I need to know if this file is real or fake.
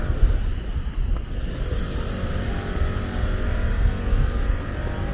real